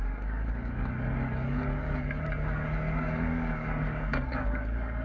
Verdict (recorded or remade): remade